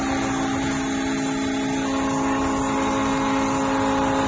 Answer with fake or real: real